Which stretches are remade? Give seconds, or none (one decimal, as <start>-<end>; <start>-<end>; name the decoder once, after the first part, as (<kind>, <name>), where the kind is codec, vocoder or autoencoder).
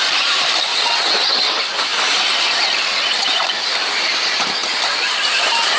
0.7-1.3 (vocoder, WaveNeXt)